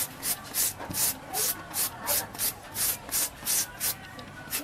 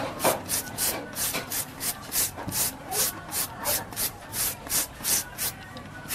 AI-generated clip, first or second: second